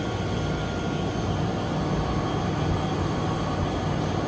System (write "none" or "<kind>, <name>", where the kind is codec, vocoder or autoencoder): none